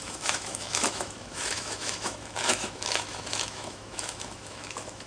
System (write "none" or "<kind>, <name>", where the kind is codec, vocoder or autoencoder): autoencoder, DAC-VAE